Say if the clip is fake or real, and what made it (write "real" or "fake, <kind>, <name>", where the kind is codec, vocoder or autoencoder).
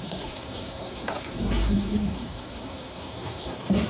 fake, codec, SNAC